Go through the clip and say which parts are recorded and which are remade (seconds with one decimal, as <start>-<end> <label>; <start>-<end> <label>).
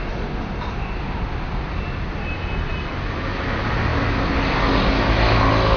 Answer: 0.0-5.8 recorded